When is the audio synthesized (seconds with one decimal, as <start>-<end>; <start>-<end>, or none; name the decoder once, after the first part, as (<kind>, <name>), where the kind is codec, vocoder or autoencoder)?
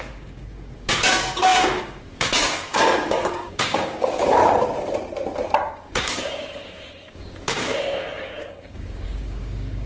0.0-4.4 (codec, DAC); 5.7-9.9